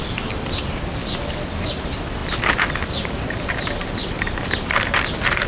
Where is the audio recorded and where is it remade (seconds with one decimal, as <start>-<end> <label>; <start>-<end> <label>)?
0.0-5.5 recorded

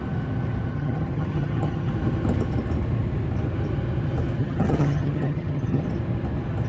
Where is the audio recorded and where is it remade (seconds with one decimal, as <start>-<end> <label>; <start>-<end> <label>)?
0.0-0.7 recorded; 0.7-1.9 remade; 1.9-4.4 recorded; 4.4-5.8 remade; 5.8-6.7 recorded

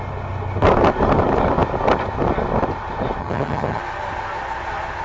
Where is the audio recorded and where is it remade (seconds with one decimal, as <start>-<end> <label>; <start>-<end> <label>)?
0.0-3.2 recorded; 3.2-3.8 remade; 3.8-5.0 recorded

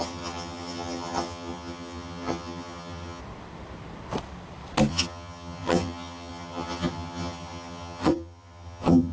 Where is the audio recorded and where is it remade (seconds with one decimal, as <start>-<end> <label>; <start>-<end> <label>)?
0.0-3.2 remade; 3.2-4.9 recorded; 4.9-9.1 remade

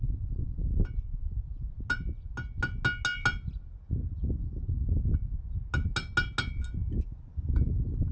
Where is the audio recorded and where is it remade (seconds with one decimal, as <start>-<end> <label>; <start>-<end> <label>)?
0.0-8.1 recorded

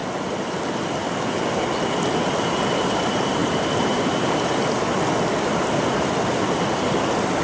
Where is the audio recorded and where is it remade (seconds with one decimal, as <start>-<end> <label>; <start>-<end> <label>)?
0.0-7.4 recorded

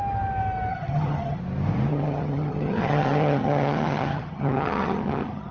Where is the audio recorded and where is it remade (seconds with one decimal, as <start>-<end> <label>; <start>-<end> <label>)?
0.0-0.7 recorded; 0.7-1.4 remade; 1.4-1.9 recorded; 1.9-5.5 remade